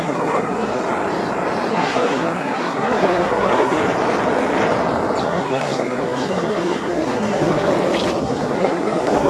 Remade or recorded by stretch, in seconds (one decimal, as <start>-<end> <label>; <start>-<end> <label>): 0.0-0.8 remade; 0.8-1.7 recorded; 1.7-3.8 remade; 3.8-5.2 recorded; 5.2-7.7 remade; 7.7-8.2 recorded; 8.2-9.3 remade